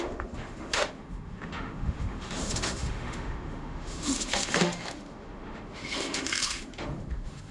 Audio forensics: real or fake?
fake